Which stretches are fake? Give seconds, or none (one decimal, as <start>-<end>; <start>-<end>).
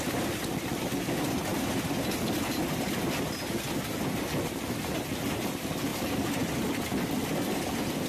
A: none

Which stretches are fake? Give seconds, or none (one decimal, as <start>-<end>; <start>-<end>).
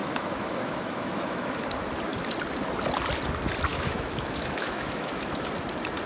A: 0.0-1.6; 3.7-5.5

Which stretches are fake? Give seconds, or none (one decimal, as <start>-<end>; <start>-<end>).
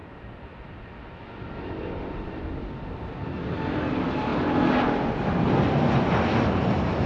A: none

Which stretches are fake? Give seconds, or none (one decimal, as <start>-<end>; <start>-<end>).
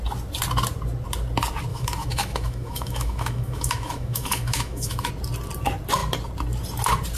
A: 1.7-5.1